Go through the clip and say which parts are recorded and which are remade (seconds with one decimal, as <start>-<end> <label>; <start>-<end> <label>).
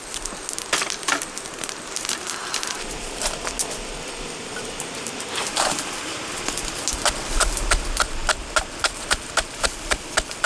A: 0.0-10.5 recorded